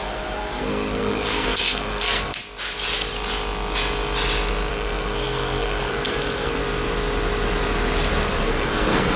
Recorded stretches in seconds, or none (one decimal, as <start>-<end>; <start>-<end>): 2.4-4.7; 6.6-8.4